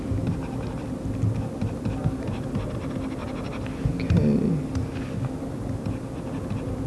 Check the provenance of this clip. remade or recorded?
recorded